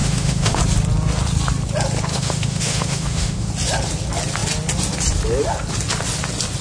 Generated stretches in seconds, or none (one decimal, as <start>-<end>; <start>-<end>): 0.0-0.6; 2.1-3.5